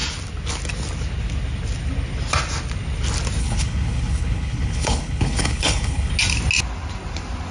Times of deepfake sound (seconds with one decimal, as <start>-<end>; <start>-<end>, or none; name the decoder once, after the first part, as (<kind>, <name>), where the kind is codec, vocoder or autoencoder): 3.4-6.1 (codec, HILCodec)